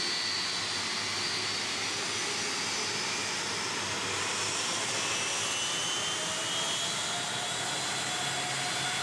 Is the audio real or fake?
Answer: real